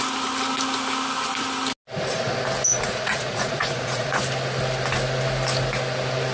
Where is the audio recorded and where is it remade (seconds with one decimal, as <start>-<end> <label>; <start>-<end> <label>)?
0.0-2.7 recorded; 2.7-4.2 remade; 4.2-6.3 recorded